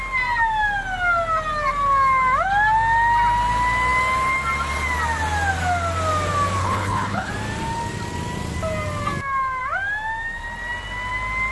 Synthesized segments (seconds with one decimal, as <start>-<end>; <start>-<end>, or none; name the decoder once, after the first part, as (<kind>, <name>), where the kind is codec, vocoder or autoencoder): 6.6-7.3 (codec, HILCodec)